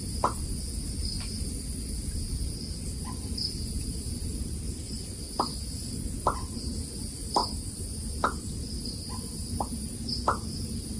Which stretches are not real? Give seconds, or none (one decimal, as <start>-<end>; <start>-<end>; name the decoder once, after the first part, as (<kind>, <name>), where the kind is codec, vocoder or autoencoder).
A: 3.9-5.0 (vocoder, BigVGAN v2); 7.4-9.5